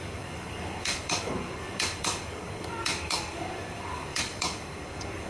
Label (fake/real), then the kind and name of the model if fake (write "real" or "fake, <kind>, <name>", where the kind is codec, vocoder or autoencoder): fake, codec, DAC